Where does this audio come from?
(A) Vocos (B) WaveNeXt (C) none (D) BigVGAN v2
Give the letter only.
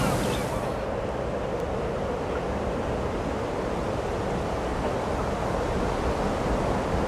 C